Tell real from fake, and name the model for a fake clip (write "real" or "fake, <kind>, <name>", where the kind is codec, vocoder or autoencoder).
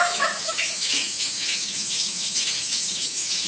fake, autoencoder, DAC-VAE